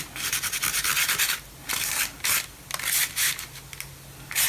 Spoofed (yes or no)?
no